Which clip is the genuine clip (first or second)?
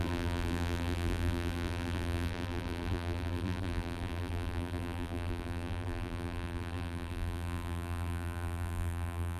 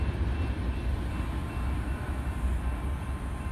second